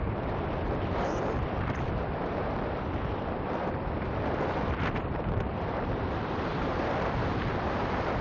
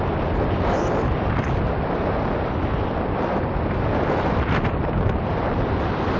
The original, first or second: second